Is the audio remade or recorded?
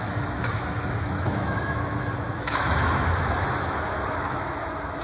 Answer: remade